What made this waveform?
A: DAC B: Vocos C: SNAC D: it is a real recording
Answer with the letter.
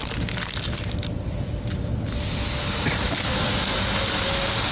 D